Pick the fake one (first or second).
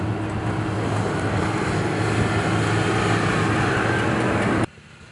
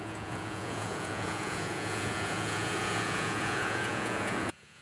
second